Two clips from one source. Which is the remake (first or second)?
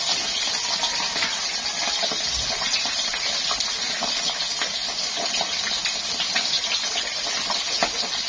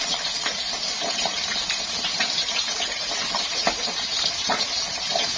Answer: second